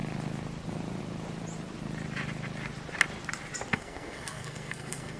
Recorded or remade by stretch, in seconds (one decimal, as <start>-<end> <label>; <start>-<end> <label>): 0.0-3.7 recorded; 3.7-5.2 remade